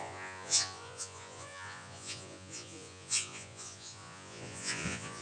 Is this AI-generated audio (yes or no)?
yes